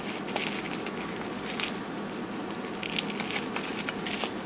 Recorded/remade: recorded